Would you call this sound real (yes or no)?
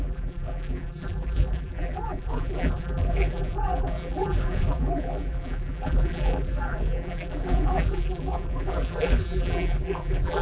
no